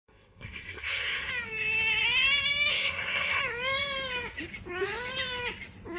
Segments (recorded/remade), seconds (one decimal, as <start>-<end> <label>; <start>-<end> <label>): 0.0-1.3 remade; 1.3-2.7 recorded; 2.7-3.4 remade; 3.4-6.0 recorded